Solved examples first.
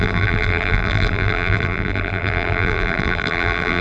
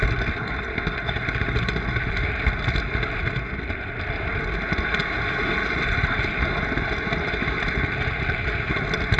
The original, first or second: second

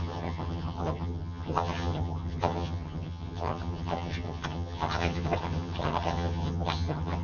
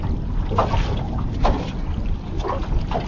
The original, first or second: second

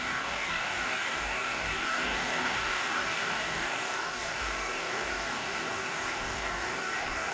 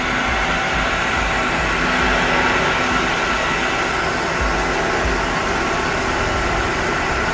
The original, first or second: second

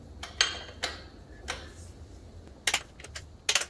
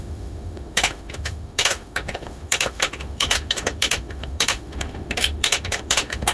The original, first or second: first